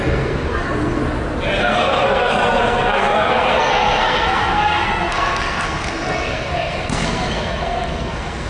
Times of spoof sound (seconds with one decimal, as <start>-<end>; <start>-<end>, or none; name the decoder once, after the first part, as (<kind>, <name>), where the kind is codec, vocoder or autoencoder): 0.0-1.0 (codec, SNAC); 1.6-8.5